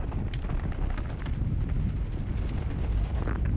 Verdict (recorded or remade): recorded